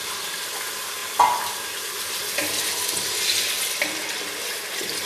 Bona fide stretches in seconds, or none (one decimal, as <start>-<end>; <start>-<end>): 0.0-5.1